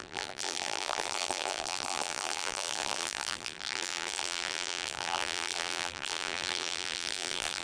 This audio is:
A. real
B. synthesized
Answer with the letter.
B